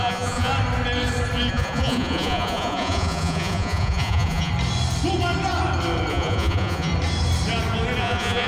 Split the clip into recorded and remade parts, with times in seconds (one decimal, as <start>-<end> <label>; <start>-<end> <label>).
0.0-0.5 remade; 0.5-1.5 recorded; 1.5-4.5 remade; 4.5-6.1 recorded; 6.1-6.9 remade; 6.9-8.0 recorded; 8.0-8.5 remade